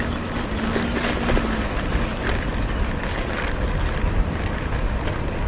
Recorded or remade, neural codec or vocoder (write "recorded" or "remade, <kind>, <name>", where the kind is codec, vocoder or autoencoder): recorded